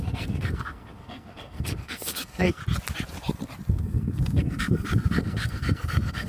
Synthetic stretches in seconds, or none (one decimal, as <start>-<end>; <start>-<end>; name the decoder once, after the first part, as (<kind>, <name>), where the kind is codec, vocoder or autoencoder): 0.0-2.6 (codec, SNAC); 3.7-6.3